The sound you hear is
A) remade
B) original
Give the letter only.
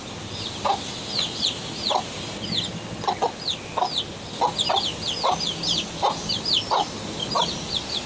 B